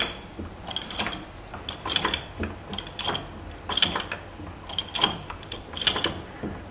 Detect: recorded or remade recorded